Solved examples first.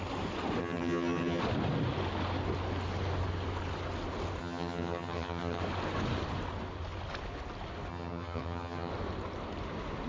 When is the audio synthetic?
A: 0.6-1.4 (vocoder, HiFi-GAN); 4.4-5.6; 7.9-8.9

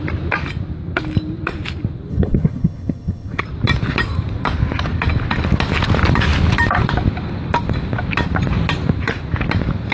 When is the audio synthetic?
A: 2.1-3.4 (vocoder, HiFi-GAN)

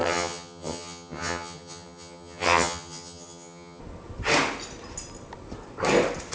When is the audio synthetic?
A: 0.0-3.8 (vocoder, HiFi-GAN)

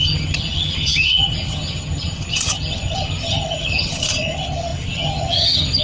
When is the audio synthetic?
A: 0.0-5.8 (vocoder, HiFi-GAN)

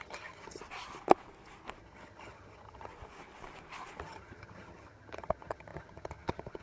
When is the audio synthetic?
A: 0.0-0.6 (vocoder, HiFi-GAN); 1.8-2.9; 4.0-6.6

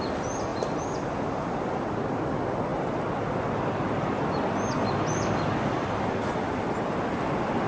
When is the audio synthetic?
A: none

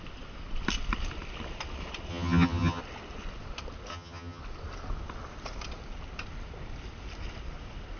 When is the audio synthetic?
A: 2.1-2.8 (vocoder, HiFi-GAN); 3.9-4.4